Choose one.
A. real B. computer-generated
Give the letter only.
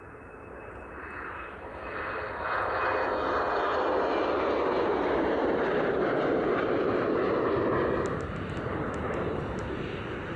A